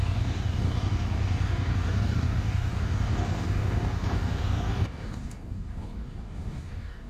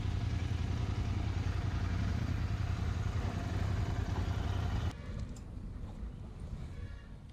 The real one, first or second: second